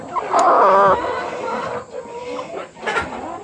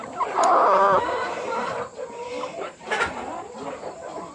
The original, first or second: first